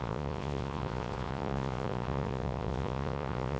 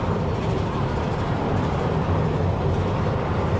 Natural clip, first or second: second